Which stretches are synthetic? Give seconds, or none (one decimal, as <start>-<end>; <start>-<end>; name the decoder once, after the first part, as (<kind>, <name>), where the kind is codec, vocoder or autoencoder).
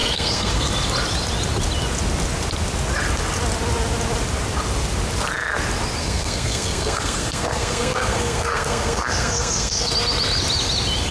0.0-0.7 (codec, SNAC); 6.0-9.9